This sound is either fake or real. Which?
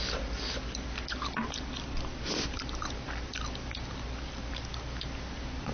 real